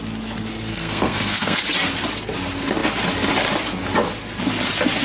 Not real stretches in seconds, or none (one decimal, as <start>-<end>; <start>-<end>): 0.7-1.6